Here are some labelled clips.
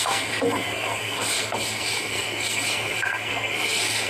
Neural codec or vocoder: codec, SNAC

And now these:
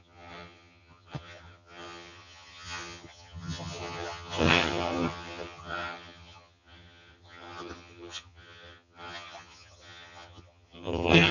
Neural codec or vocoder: vocoder, HiFi-GAN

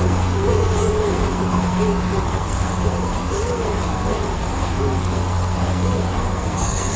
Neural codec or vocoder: codec, SNAC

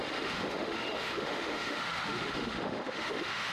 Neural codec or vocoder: autoencoder, DAC-VAE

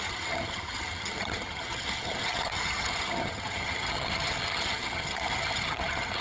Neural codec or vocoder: vocoder, HiFi-GAN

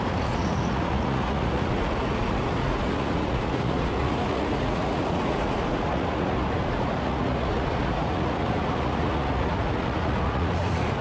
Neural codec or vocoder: vocoder, Vocos